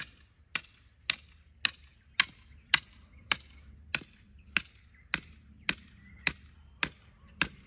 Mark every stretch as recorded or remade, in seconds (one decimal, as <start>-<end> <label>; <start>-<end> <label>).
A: 0.0-7.7 recorded